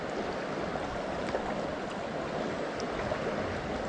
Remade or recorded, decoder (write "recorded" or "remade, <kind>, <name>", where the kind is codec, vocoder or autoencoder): recorded